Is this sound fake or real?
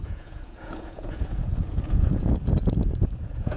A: fake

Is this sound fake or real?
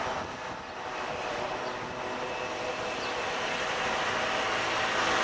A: real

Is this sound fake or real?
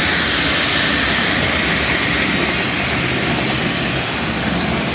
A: real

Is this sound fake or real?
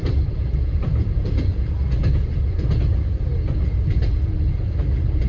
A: fake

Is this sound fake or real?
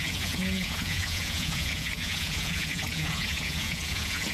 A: fake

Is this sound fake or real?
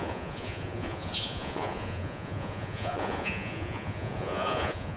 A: fake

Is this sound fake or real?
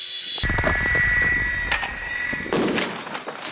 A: real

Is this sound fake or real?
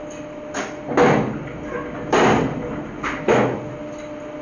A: real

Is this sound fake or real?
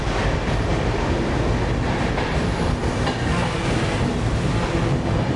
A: real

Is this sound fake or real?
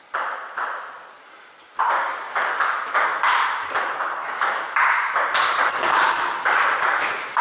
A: real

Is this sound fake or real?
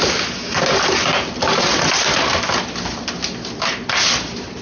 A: real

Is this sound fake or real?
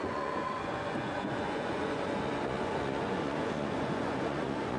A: fake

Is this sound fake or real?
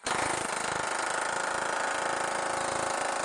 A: real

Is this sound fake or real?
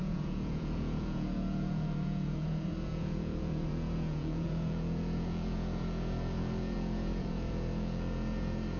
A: fake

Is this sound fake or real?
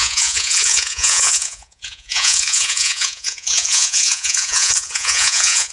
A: fake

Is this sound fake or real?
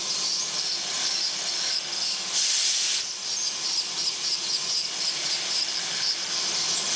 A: real